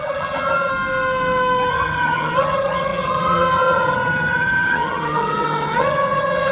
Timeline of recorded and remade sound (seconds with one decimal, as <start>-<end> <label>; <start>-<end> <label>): 0.0-0.7 remade; 0.7-1.7 recorded; 1.7-6.5 remade